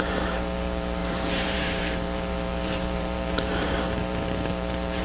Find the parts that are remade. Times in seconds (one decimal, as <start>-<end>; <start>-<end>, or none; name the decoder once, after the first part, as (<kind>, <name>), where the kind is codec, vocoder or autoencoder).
0.0-5.0 (vocoder, BigVGAN v2)